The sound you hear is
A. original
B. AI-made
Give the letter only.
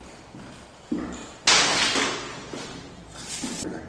A